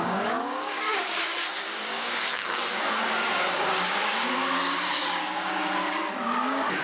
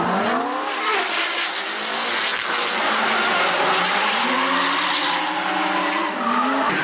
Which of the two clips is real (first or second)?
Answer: second